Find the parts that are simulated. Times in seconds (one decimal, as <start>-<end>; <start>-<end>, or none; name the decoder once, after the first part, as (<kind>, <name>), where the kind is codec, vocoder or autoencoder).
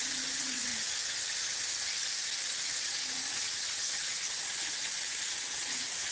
0.0-0.7 (vocoder, WaveNeXt); 2.5-6.1